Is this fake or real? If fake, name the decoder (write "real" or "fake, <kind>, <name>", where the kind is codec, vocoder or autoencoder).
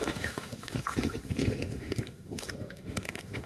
fake, autoencoder, DAC-VAE